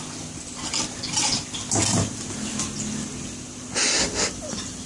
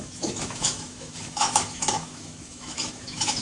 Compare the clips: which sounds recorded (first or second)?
first